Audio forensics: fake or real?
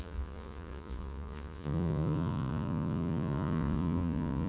fake